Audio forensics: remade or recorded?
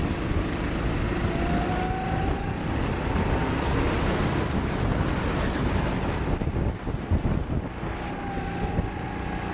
recorded